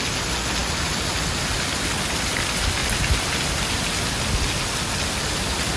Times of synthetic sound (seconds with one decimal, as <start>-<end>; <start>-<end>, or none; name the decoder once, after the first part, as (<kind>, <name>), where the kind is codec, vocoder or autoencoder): none

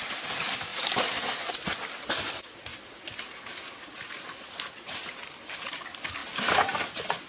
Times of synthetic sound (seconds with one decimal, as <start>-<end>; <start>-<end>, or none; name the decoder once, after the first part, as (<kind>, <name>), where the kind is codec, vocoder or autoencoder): 0.0-0.7 (vocoder, BigVGAN v2); 2.3-2.7; 4.7-7.3

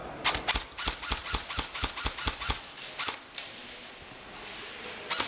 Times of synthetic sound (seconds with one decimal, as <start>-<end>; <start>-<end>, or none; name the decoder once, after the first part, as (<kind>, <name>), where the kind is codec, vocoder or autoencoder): 3.2-5.3 (vocoder, BigVGAN v2)